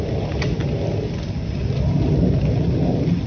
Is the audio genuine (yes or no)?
yes